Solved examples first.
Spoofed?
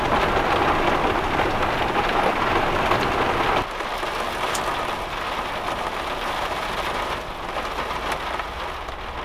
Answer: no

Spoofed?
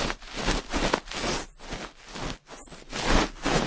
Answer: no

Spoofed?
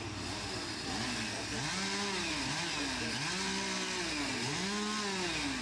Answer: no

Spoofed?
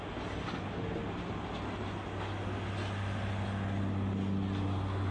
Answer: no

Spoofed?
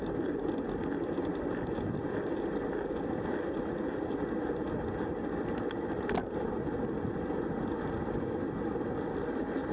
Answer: no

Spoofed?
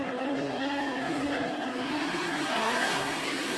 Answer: yes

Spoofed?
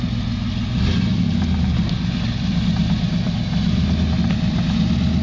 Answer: no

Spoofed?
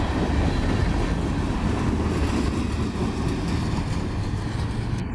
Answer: no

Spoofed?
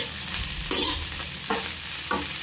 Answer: no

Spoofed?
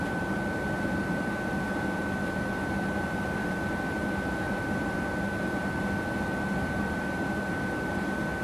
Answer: no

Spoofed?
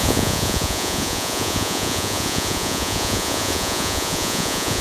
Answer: yes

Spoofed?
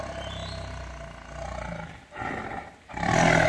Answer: no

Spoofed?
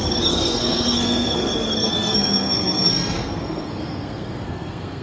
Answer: yes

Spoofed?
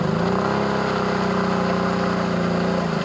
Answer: no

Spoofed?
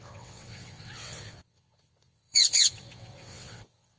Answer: yes